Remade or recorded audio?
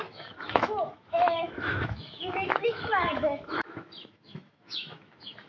remade